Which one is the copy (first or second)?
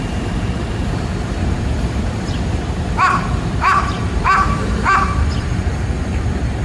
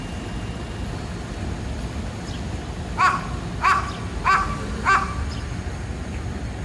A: first